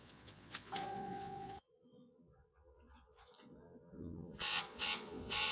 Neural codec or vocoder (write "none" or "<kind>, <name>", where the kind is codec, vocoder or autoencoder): vocoder, Vocos